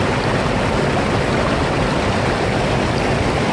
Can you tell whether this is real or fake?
real